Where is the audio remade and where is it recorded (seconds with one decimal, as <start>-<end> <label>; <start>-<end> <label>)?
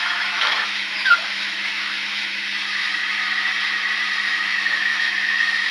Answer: 0.0-3.0 remade; 3.0-4.3 recorded; 4.3-5.7 remade